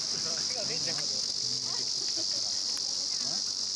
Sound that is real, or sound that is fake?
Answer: real